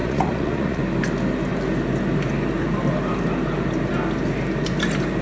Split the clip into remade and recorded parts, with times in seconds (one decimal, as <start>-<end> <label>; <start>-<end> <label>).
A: 0.0-0.8 remade; 0.8-5.2 recorded